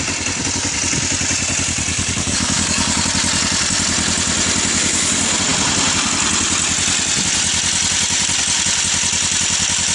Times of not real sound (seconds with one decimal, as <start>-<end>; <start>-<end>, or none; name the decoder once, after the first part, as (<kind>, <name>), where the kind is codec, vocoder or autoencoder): 1.9-3.0 (codec, DAC)